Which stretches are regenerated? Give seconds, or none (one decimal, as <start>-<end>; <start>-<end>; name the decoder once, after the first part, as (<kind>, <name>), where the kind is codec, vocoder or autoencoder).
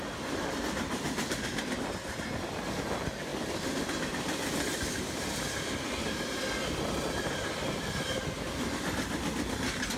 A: none